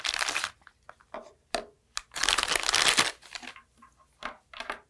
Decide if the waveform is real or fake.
real